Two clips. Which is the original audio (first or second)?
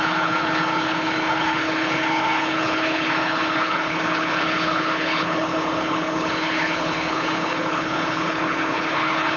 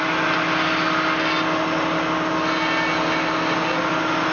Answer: second